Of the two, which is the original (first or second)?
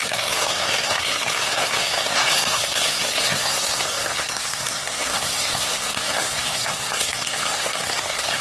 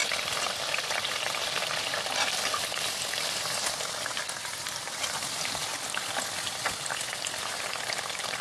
second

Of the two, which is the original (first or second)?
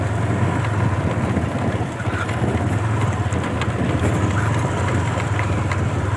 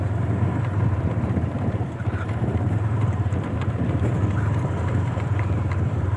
first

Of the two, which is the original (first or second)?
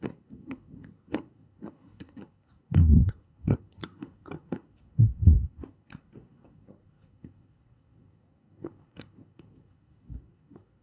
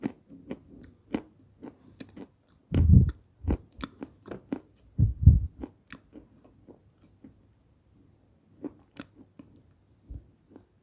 second